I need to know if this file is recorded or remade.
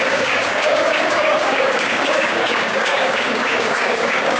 remade